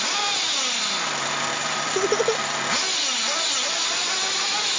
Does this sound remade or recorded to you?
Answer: recorded